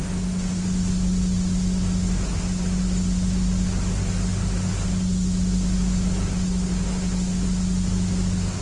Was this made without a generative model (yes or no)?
yes